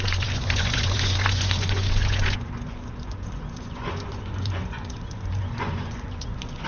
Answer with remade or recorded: remade